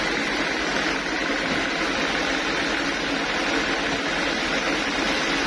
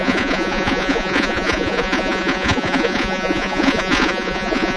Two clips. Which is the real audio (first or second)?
first